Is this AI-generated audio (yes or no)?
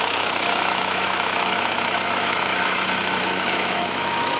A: yes